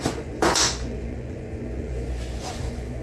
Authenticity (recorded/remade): remade